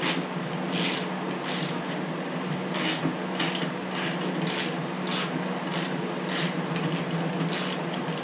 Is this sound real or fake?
real